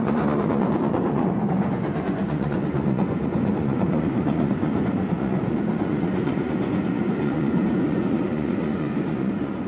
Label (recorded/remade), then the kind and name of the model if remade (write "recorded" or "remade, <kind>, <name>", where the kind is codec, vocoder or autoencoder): remade, vocoder, Vocos